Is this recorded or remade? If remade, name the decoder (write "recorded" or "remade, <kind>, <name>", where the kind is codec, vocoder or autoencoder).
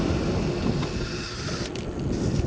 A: recorded